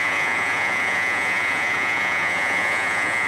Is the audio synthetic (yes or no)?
yes